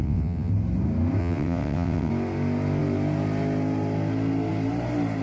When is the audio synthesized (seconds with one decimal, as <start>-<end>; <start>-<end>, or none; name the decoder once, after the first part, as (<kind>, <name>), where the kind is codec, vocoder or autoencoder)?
0.0-0.5 (vocoder, WaveNeXt); 1.2-2.1